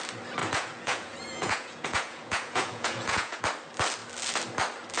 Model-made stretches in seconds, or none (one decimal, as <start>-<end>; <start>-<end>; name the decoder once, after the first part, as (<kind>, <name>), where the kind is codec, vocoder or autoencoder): 0.4-3.4 (vocoder, Vocos)

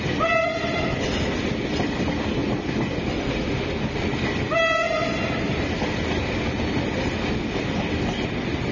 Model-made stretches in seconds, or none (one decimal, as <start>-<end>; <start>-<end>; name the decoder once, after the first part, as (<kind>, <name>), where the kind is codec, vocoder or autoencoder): none

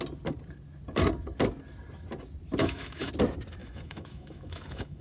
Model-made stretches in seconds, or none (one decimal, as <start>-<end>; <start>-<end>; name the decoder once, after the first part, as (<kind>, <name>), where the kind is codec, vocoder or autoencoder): 2.6-3.1 (autoencoder, DAC-VAE); 3.6-5.0